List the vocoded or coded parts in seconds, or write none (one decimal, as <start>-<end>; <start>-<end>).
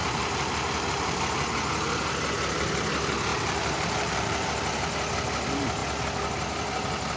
0.0-1.2; 3.3-4.5